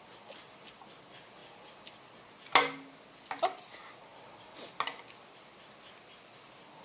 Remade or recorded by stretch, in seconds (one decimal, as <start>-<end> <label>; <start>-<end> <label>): 0.0-6.8 recorded